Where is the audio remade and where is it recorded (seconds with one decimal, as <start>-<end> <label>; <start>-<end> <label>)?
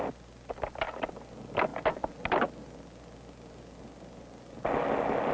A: 0.0-5.3 recorded